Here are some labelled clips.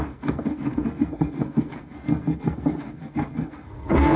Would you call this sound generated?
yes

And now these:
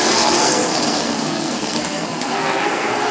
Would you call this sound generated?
yes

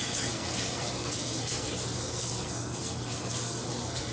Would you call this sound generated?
yes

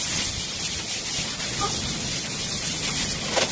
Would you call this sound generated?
no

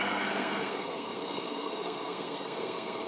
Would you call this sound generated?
yes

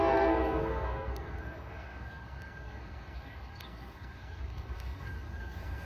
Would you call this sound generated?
yes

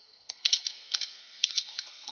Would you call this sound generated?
yes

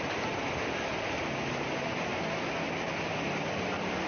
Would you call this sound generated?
no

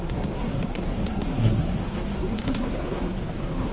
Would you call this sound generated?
yes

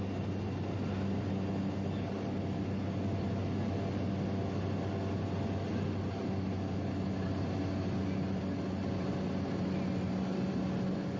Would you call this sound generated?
no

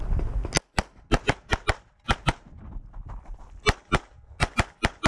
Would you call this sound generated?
no